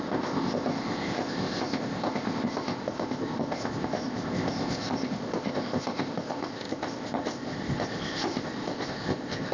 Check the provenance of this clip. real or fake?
fake